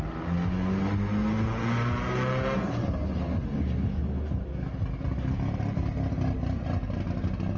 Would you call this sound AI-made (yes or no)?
no